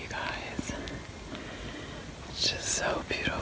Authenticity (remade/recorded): recorded